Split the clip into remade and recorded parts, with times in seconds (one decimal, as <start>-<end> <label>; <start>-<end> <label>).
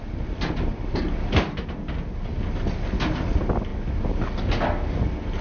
0.0-5.4 recorded